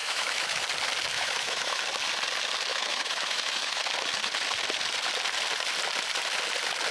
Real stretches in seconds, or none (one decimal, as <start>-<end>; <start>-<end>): 0.6-1.1; 1.8-2.7; 3.8-6.9